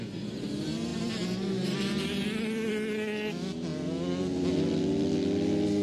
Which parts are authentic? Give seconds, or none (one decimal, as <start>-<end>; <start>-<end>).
0.0-5.8